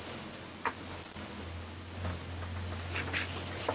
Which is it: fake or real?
real